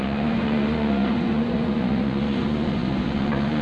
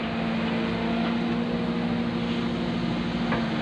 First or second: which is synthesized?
first